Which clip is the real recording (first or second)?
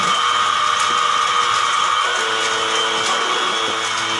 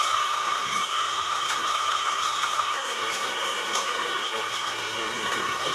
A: first